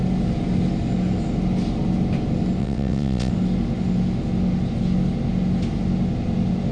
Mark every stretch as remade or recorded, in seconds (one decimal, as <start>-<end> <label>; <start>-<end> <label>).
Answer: 0.0-2.6 recorded; 2.6-3.3 remade; 3.3-6.7 recorded